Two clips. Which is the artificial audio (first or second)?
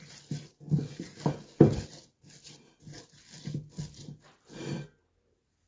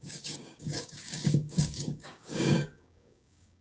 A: second